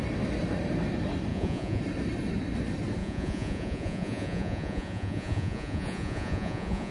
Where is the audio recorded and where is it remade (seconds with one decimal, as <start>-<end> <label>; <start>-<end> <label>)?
0.0-1.3 recorded; 1.3-1.8 remade; 1.8-3.0 recorded; 3.0-6.9 remade